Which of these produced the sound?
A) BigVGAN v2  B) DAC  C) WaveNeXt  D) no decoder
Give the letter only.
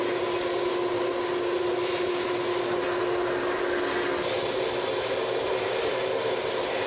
D